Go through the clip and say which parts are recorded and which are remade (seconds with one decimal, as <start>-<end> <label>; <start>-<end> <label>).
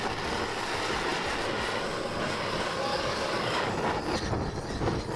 0.0-2.9 recorded; 2.9-3.7 remade; 3.7-5.2 recorded